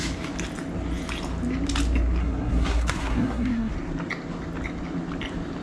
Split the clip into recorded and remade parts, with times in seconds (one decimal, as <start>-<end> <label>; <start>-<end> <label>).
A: 0.0-2.2 recorded; 2.2-3.7 remade; 3.7-5.6 recorded